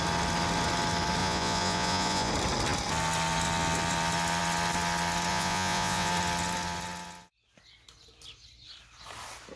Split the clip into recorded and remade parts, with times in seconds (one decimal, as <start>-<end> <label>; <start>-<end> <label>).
0.0-1.2 recorded; 1.2-2.3 remade; 2.3-5.3 recorded; 5.3-6.1 remade; 6.1-9.6 recorded